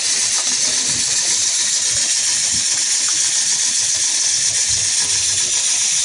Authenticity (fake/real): fake